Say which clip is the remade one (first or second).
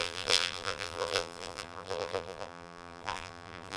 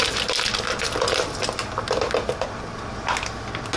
first